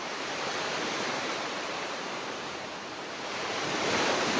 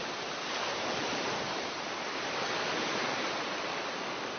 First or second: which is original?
second